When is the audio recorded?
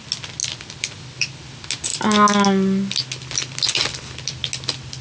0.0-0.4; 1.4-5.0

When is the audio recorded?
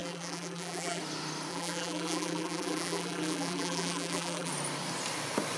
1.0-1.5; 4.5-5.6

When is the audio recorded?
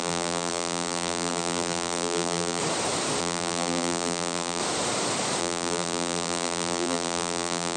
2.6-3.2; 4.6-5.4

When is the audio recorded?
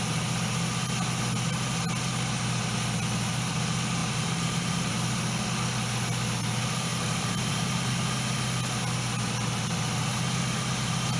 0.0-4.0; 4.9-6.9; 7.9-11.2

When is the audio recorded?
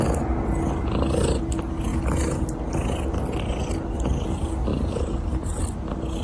0.0-4.7; 5.6-6.2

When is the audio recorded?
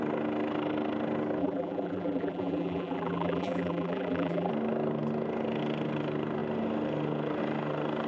0.0-1.4; 4.5-8.1